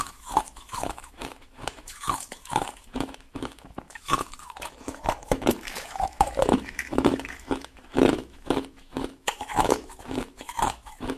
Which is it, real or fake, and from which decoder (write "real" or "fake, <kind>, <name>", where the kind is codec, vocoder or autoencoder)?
fake, autoencoder, DAC-VAE